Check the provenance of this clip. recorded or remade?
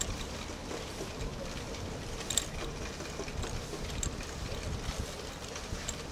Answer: recorded